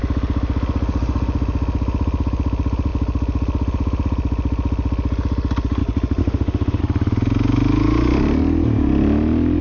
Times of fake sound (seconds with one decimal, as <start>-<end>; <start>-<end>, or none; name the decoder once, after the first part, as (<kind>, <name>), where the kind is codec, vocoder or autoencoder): 6.2-6.8 (autoencoder, DAC-VAE)

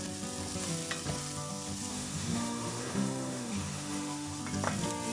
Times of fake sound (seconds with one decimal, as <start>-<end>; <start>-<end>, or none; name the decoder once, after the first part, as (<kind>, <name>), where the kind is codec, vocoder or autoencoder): 1.9-4.4 (autoencoder, DAC-VAE)

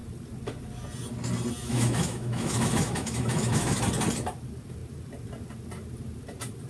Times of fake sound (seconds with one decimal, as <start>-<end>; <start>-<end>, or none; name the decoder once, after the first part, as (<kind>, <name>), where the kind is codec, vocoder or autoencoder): 1.6-3.8 (autoencoder, DAC-VAE)